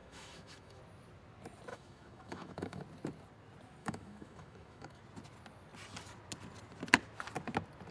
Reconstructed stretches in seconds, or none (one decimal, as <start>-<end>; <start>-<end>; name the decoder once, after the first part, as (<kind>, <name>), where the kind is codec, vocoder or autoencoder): 0.0-0.8 (autoencoder, DAC-VAE); 1.7-2.8; 3.8-5.0